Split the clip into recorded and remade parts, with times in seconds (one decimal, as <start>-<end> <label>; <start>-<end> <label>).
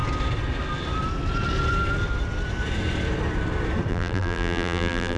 0.0-3.9 recorded; 3.9-5.2 remade